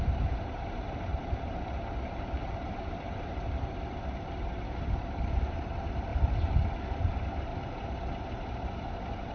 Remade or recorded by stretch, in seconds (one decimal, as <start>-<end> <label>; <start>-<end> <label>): 0.0-6.1 remade; 6.1-7.1 recorded; 7.1-7.5 remade; 7.5-8.5 recorded; 8.5-9.3 remade